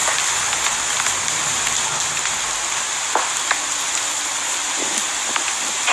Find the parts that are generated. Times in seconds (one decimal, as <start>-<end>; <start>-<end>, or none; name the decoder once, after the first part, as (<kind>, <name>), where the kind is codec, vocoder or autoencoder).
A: none